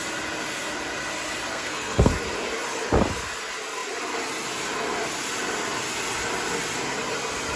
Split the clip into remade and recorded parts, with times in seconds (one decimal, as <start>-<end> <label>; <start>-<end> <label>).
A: 0.0-1.5 recorded; 1.5-2.1 remade; 2.1-7.6 recorded